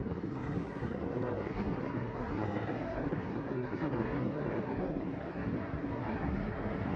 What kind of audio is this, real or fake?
fake